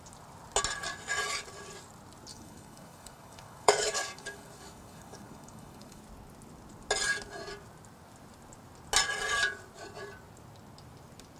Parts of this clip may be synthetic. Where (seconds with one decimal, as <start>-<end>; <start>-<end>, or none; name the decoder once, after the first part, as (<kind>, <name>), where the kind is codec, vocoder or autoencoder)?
2.3-6.0 (codec, DAC)